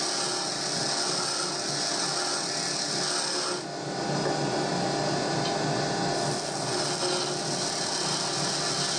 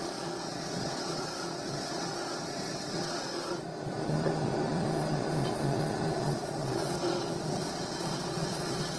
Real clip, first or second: first